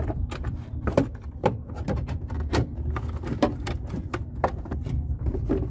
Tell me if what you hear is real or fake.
fake